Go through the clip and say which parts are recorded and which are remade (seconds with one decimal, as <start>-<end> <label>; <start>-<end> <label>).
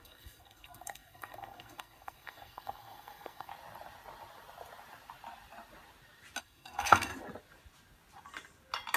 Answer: 0.0-3.5 remade; 3.5-6.4 recorded; 6.4-7.1 remade; 7.1-9.0 recorded